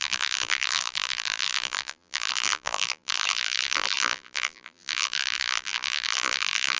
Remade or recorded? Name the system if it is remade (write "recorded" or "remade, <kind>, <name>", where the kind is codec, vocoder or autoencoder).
remade, vocoder, BigVGAN v2